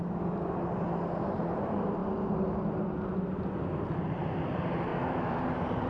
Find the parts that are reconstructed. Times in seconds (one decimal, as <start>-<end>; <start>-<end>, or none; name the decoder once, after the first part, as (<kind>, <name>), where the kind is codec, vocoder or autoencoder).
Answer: 4.9-5.4 (autoencoder, DAC-VAE)